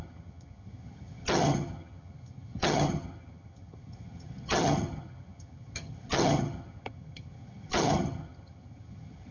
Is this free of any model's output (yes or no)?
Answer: no